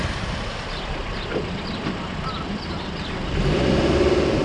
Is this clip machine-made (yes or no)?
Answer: yes